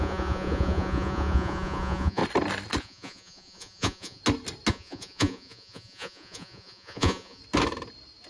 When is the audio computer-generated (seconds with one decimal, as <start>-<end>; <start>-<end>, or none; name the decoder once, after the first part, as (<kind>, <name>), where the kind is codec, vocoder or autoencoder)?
0.0-2.2 (vocoder, Vocos); 2.8-4.2; 4.7-7.4